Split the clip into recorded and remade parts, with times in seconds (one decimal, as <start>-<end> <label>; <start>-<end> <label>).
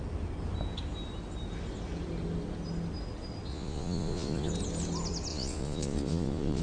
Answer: 0.0-3.5 recorded; 3.5-4.5 remade; 4.5-5.3 recorded; 5.3-6.6 remade